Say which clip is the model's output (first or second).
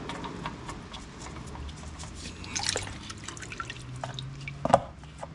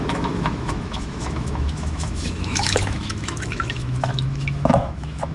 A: second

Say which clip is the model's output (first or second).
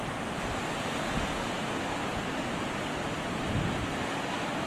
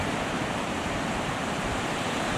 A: second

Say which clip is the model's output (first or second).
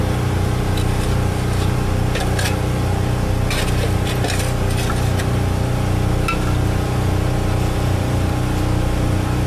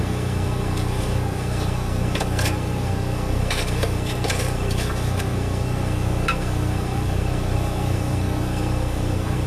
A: second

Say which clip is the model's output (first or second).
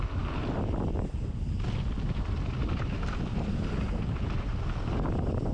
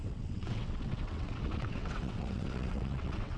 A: second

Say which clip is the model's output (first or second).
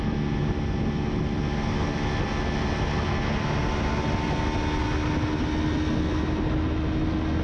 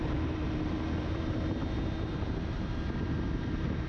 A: second